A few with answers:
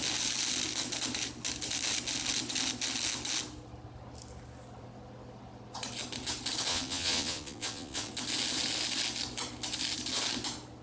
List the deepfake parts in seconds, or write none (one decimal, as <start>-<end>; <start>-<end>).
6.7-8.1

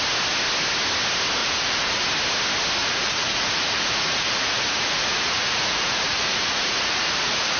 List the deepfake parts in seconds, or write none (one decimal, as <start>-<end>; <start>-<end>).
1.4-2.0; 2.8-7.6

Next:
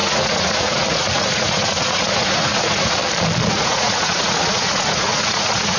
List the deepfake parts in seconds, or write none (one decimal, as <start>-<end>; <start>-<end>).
0.0-3.0; 3.5-5.8

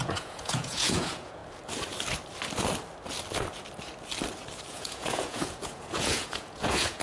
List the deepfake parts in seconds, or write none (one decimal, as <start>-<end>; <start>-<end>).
0.0-1.4; 4.7-7.0

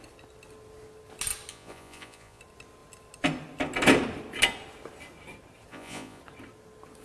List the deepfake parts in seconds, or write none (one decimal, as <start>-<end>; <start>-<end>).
1.5-2.4; 5.7-6.2